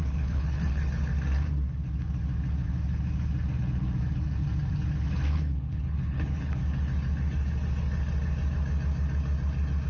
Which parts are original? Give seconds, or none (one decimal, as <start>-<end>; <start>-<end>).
0.8-5.3; 6.6-9.9